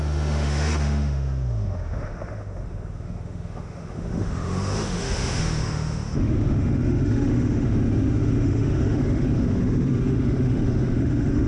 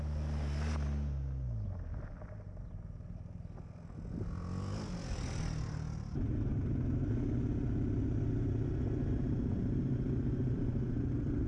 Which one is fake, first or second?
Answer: first